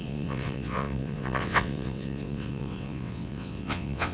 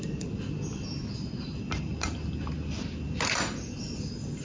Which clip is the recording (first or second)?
second